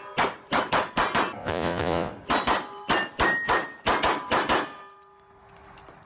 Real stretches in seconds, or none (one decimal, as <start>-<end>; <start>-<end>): 0.0-1.4; 2.1-6.1